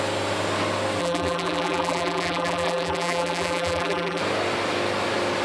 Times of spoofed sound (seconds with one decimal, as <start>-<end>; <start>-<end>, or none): 1.0-4.2